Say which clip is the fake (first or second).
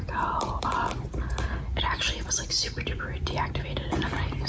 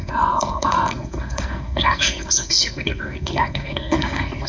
second